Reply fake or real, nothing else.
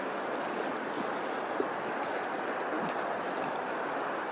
real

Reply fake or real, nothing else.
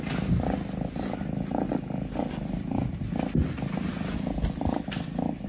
real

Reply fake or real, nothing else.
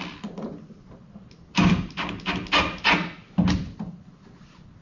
real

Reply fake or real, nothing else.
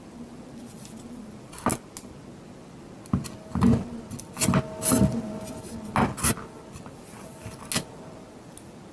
real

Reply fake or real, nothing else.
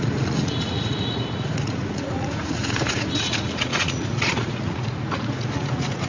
fake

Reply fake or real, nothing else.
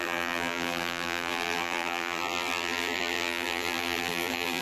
fake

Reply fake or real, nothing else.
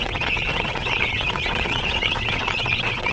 fake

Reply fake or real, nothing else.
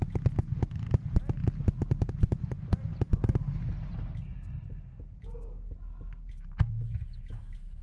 real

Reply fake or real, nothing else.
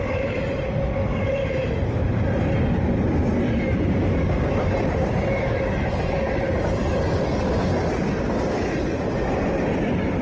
real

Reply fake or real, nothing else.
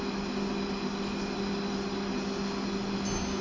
real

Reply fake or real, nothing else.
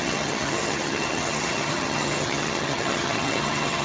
fake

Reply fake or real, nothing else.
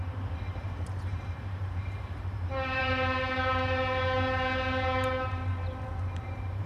fake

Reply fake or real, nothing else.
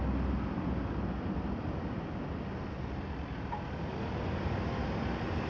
real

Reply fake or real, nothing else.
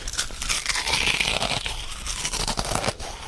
real